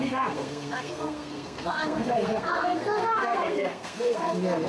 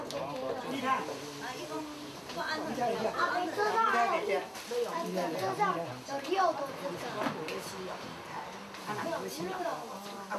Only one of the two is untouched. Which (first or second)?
second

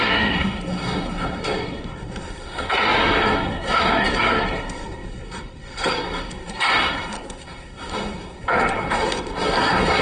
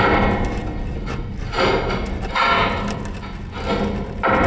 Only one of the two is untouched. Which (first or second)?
second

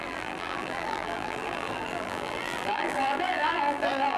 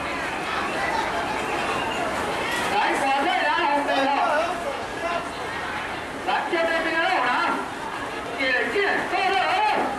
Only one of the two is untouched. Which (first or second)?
second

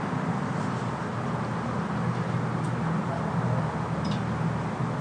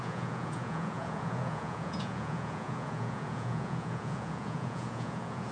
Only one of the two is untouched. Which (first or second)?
first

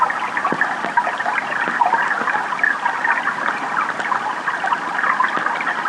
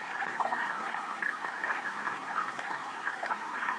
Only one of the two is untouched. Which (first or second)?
first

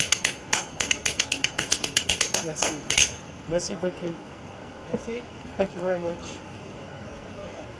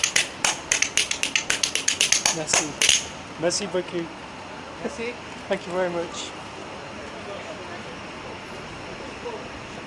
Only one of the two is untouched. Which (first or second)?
second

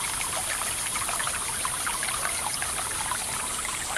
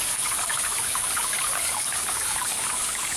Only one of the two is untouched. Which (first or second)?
first